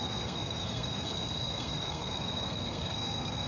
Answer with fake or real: fake